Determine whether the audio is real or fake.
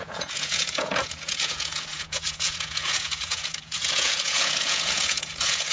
fake